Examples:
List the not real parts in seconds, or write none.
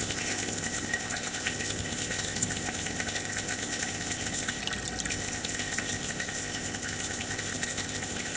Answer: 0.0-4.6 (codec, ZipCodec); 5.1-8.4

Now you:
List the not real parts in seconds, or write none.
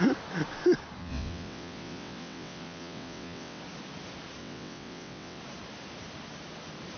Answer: 1.0-3.6 (vocoder, WaveNeXt); 4.4-5.4